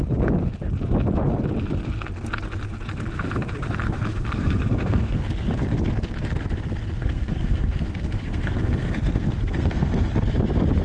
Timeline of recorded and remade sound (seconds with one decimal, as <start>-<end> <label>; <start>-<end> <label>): 0.0-4.1 recorded; 4.1-5.3 remade; 5.3-7.0 recorded; 7.0-10.1 remade; 10.1-10.8 recorded